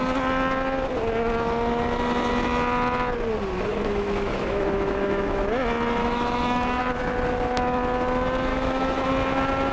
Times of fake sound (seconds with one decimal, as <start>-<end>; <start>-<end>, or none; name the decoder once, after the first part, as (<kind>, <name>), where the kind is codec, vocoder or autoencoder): 3.7-5.4 (autoencoder, DAC-VAE); 6.0-6.8; 8.5-9.1